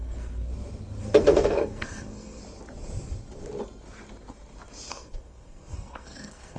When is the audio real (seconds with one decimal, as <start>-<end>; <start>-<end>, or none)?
0.5-1.0; 2.4-4.9